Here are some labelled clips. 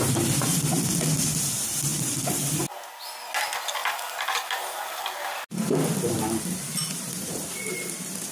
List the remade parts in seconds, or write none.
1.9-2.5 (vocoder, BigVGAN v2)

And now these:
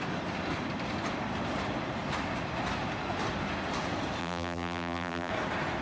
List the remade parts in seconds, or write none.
4.2-5.3 (vocoder, BigVGAN v2)

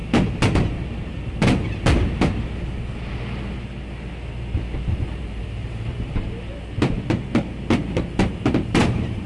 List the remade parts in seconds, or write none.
5.2-5.9 (vocoder, BigVGAN v2); 8.5-9.3

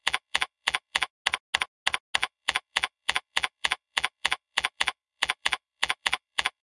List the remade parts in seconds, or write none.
0.0-1.1 (vocoder, BigVGAN v2); 2.2-6.6

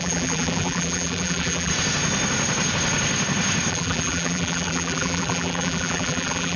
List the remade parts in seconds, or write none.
0.0-1.7 (vocoder, BigVGAN v2); 3.7-6.6

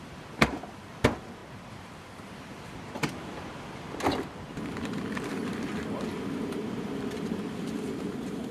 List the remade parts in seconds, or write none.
0.0-1.4 (vocoder, BigVGAN v2); 6.5-8.5

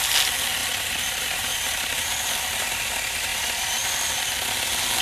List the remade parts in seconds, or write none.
0.6-2.3 (vocoder, BigVGAN v2)

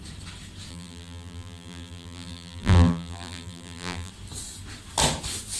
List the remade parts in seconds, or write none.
0.7-4.1 (vocoder, BigVGAN v2)